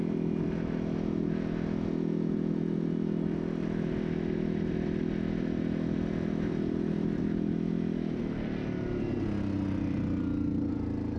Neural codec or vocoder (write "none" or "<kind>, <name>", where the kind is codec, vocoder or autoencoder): none